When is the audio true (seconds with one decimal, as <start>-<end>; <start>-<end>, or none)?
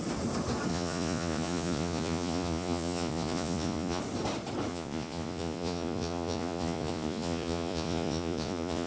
0.0-0.7; 4.0-4.7